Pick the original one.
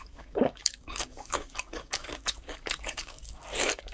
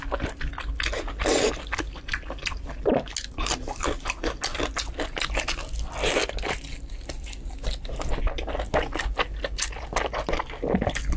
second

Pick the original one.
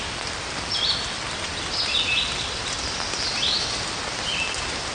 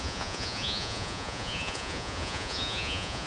first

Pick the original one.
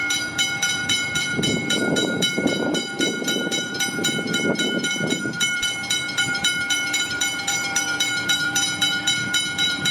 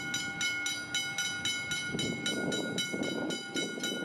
second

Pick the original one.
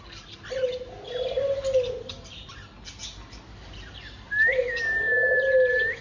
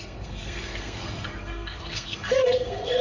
first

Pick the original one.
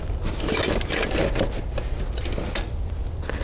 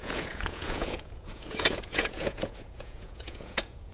first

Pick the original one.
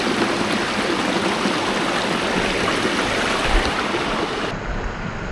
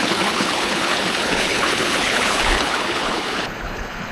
first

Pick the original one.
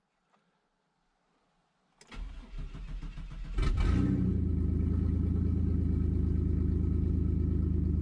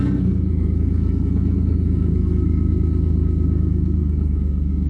first